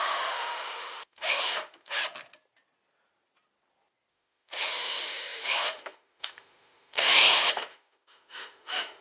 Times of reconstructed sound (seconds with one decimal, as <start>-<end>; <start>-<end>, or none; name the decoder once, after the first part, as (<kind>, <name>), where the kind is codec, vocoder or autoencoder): 0.0-2.0 (autoencoder, DAC-VAE); 4.1-9.0